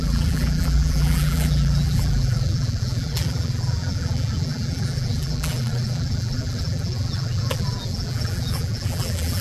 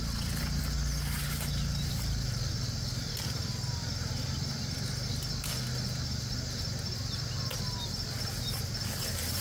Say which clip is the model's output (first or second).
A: first